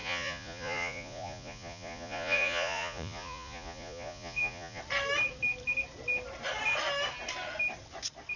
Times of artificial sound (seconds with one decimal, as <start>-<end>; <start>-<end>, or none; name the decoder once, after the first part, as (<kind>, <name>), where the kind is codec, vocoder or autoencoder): 0.0-4.8 (vocoder, Vocos)